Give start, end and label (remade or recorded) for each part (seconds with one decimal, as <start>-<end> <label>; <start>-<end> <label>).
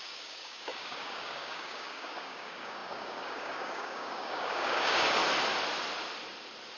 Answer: 0.0-5.2 remade; 5.2-6.8 recorded